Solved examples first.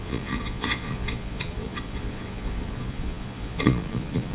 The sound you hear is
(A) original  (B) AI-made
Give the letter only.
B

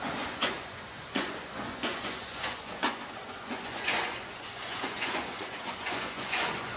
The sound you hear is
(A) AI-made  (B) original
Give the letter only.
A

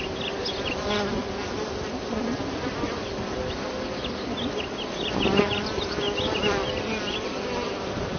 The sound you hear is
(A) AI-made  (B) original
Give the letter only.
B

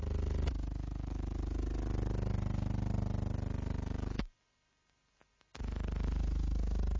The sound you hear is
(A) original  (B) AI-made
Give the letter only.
A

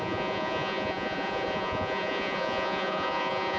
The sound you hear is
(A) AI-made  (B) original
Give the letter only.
A